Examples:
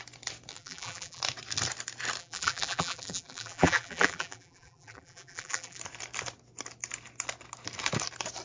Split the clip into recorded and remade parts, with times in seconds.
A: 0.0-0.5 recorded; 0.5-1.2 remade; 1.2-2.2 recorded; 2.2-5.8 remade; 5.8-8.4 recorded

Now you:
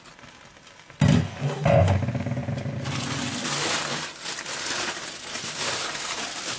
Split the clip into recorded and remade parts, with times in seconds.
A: 0.0-6.6 recorded